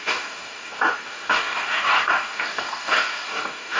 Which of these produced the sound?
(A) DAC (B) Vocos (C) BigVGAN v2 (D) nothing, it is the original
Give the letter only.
A